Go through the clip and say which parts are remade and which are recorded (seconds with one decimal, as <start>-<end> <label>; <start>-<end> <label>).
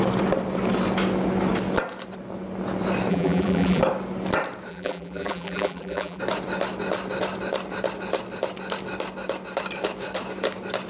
0.0-3.1 recorded; 3.1-3.8 remade; 3.8-4.7 recorded; 4.7-6.2 remade; 6.2-10.9 recorded